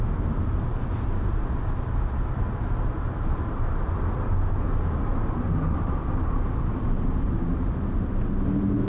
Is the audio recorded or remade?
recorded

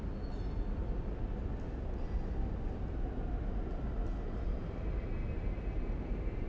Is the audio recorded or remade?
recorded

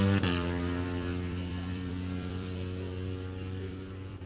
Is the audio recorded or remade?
remade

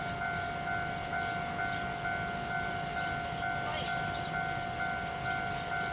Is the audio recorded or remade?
recorded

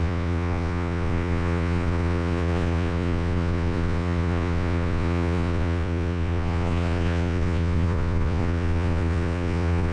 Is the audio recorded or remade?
remade